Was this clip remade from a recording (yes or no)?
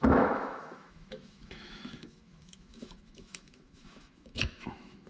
yes